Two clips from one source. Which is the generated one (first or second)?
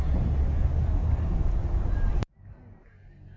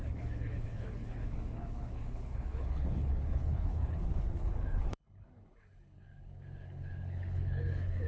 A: second